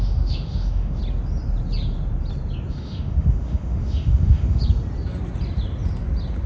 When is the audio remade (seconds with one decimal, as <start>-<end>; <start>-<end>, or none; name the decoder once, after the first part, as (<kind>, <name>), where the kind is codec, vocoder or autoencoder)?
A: 0.0-1.0 (autoencoder, DAC-VAE); 2.7-4.6